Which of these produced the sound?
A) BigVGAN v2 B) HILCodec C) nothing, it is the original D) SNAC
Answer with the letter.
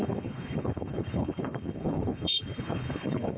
B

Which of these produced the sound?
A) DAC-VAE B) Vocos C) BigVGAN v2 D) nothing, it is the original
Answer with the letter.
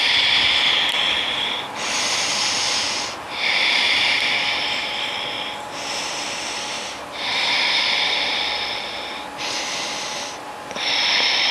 C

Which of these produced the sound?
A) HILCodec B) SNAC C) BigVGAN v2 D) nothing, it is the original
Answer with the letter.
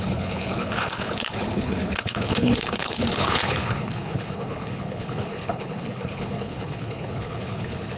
A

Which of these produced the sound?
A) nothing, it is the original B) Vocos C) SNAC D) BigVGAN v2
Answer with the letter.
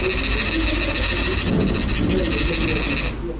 A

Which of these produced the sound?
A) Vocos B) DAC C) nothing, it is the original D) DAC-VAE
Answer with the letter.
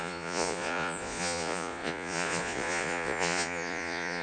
A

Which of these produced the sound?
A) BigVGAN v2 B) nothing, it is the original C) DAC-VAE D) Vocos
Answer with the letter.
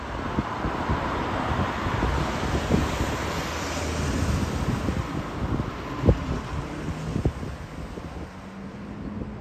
B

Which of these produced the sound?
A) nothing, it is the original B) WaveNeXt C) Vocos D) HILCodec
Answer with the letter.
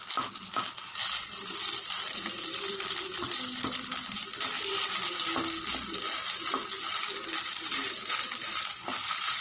A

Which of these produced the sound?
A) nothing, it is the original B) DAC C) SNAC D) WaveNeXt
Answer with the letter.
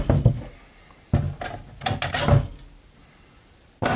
A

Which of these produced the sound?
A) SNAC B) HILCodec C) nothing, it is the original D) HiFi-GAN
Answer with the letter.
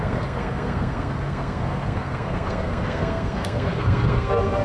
A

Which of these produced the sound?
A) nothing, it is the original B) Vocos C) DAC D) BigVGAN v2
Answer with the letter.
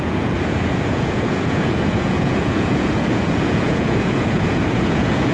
B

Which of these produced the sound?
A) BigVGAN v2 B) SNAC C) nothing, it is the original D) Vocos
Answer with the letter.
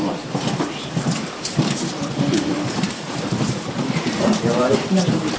A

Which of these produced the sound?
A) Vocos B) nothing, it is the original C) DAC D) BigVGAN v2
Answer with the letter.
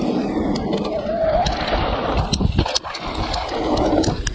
B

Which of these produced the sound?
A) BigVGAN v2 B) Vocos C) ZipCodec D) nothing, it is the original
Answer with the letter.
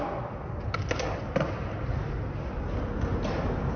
D